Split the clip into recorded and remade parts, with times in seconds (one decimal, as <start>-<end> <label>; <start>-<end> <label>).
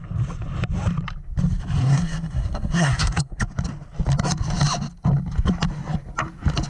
0.0-1.8 recorded; 1.8-3.4 remade; 3.4-6.7 recorded